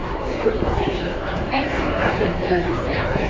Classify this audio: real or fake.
fake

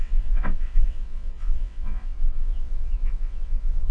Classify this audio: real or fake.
fake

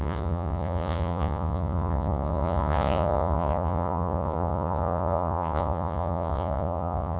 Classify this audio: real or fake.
fake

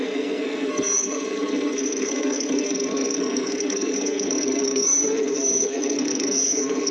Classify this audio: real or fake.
fake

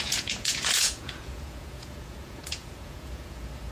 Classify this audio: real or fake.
fake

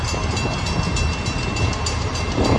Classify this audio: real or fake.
real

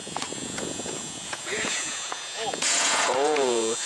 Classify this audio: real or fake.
fake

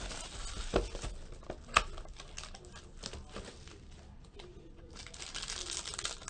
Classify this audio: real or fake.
real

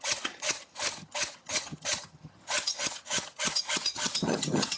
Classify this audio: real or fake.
fake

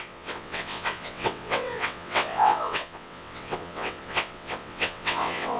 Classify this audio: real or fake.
fake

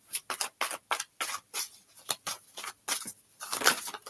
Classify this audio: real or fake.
real